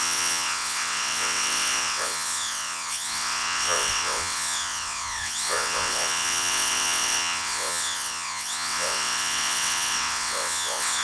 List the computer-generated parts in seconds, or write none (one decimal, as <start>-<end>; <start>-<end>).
0.0-11.0